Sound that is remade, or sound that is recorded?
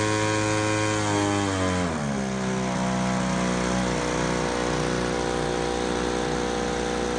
recorded